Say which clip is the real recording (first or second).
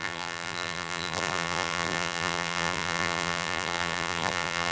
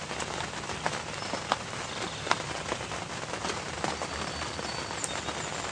second